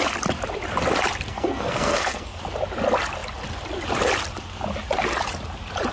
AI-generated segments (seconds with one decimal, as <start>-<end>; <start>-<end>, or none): 1.3-2.4